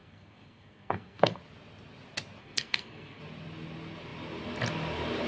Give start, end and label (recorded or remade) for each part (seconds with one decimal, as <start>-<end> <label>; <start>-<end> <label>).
0.0-1.4 remade; 1.4-2.4 recorded; 2.4-3.2 remade; 3.2-5.3 recorded